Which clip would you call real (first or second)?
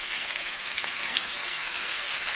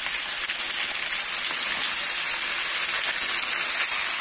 second